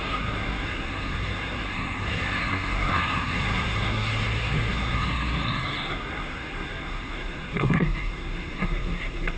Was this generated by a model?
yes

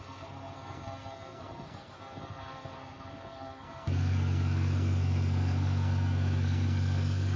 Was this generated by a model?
yes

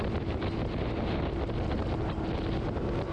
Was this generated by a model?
no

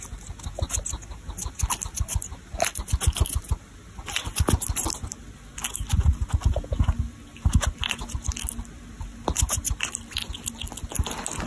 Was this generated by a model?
no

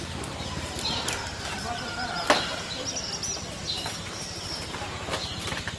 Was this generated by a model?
no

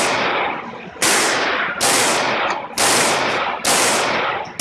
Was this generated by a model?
no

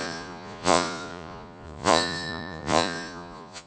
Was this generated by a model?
yes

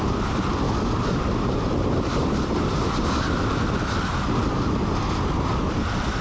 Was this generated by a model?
no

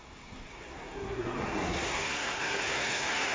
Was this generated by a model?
yes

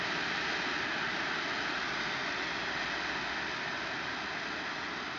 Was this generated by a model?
no